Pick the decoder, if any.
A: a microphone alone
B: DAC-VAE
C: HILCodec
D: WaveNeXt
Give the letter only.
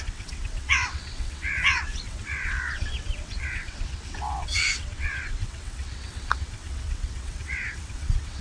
D